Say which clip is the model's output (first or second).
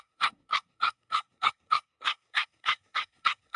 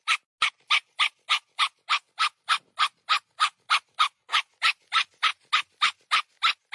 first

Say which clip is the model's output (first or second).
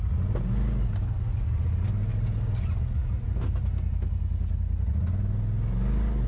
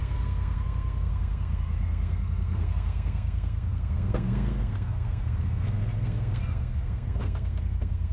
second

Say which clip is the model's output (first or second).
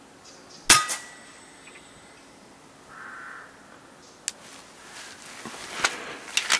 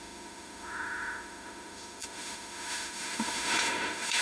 second